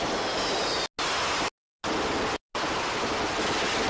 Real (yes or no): yes